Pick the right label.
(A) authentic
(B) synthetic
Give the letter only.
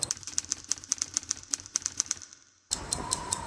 B